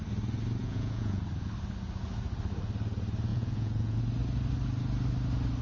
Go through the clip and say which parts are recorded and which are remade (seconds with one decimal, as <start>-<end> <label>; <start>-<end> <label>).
0.0-0.6 recorded; 0.6-1.2 remade; 1.2-3.3 recorded; 3.3-4.0 remade; 4.0-5.6 recorded